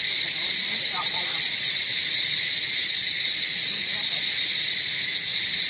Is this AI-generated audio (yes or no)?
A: no